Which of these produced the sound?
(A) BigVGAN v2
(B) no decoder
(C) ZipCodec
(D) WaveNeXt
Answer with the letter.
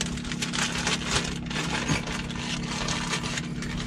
B